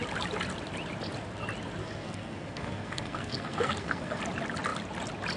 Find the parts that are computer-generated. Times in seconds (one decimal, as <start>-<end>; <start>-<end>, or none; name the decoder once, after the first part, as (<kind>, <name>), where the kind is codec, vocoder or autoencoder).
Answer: 1.8-4.2 (codec, SNAC)